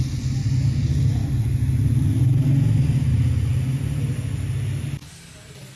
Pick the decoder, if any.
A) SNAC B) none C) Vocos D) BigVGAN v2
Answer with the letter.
B